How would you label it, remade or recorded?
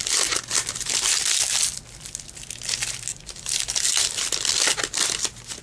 recorded